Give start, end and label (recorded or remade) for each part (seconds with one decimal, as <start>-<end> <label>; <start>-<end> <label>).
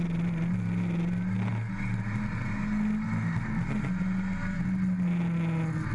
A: 0.0-5.9 recorded